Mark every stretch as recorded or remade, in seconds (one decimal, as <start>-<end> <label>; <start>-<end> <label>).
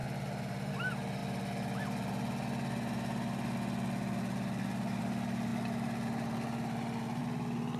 0.0-7.8 recorded